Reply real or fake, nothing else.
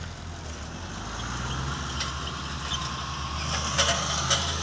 real